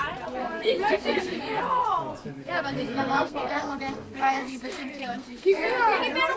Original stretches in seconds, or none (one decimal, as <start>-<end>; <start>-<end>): 0.0-0.4; 1.6-2.2; 6.0-6.4